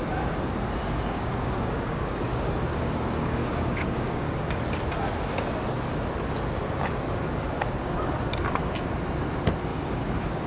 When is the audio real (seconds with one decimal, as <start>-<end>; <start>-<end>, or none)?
0.0-0.8; 4.6-9.7

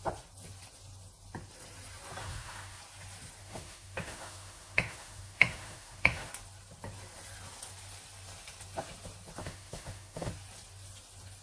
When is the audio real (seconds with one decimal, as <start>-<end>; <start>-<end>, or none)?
0.0-2.2; 2.8-3.4; 6.3-9.4; 10.3-11.4

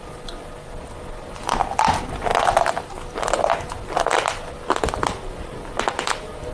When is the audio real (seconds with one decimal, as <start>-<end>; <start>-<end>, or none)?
0.0-6.5

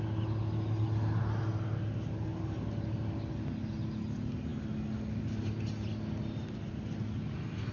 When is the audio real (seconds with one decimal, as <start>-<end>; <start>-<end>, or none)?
0.0-7.7

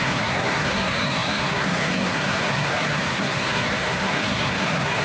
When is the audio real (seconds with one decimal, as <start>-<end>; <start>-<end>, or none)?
none

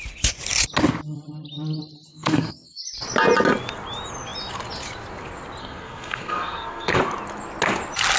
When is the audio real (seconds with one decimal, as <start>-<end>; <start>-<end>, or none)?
0.0-2.1; 2.8-5.6; 7.0-8.2

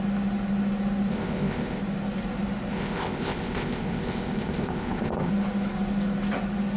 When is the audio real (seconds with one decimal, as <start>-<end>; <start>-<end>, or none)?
0.0-1.1; 1.8-2.7; 5.3-6.8

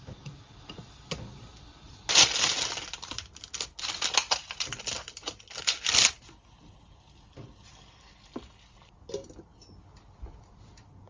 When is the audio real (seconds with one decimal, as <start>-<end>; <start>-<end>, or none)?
0.0-11.1